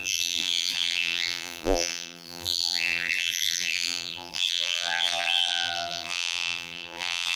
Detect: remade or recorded remade